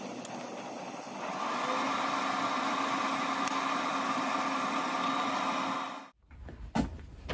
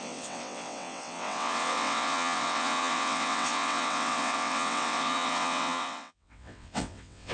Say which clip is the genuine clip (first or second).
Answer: first